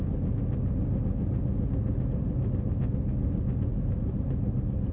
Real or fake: real